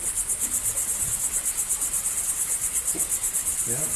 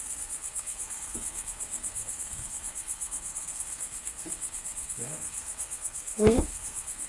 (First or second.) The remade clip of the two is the second